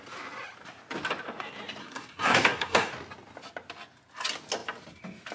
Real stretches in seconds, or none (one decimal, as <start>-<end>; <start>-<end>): 0.0-1.8; 2.9-5.3